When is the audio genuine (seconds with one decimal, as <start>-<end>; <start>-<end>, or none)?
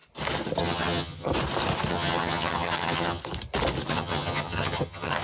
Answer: 0.0-0.6; 1.3-1.9; 3.2-3.9